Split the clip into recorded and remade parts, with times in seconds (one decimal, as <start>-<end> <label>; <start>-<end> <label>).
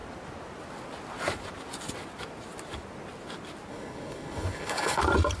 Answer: 0.0-3.7 recorded; 3.7-5.0 remade; 5.0-5.4 recorded